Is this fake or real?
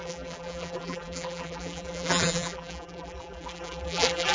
fake